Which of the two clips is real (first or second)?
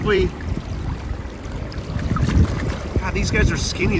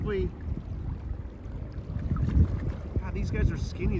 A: second